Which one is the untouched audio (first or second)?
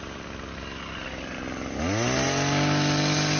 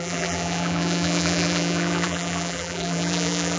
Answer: first